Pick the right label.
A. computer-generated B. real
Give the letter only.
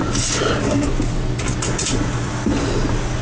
B